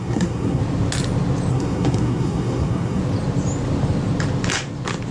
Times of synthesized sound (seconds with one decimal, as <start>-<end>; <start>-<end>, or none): 0.0-0.6; 1.5-3.0